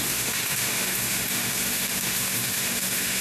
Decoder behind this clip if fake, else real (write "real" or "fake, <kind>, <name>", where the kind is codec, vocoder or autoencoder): fake, autoencoder, DAC-VAE